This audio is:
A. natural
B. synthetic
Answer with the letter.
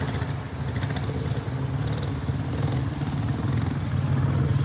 A